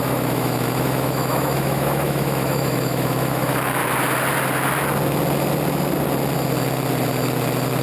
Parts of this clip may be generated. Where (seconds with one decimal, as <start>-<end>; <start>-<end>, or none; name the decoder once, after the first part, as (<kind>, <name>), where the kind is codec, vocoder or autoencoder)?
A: 0.0-3.8 (autoencoder, DAC-VAE)